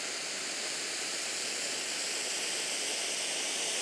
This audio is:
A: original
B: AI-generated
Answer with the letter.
A